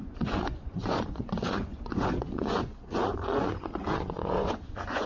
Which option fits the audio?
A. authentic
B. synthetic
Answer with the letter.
B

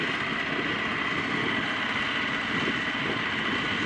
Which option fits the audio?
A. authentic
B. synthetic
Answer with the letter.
A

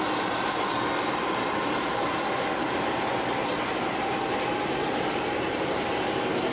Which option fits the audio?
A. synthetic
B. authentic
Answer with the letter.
B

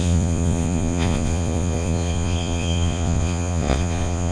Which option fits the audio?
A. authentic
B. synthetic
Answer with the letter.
B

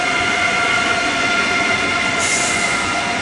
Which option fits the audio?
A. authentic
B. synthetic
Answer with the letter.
B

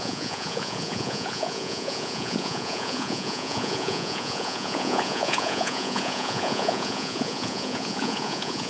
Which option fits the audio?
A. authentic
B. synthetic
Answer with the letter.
B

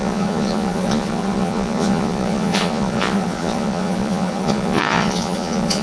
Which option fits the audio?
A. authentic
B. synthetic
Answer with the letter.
B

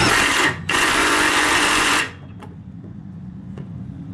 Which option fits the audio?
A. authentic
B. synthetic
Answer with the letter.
B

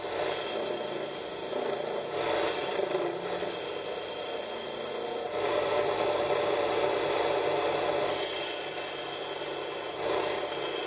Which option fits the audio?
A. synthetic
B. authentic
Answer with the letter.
B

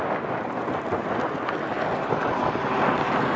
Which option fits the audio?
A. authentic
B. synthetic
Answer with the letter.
A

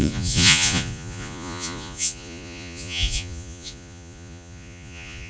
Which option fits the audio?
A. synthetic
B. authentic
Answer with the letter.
A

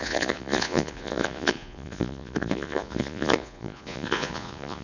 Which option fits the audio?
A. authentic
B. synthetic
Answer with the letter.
B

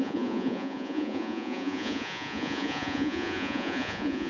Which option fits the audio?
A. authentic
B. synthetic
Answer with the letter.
B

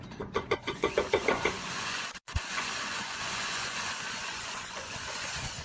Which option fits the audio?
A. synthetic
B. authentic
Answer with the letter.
A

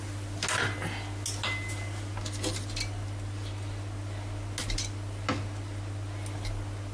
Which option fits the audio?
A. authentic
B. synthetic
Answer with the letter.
A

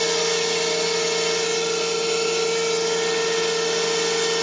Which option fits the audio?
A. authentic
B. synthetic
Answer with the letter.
A